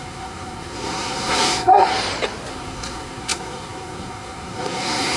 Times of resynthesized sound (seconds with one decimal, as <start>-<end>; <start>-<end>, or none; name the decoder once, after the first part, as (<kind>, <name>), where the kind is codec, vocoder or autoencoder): 0.0-1.9 (codec, SNAC); 2.5-5.2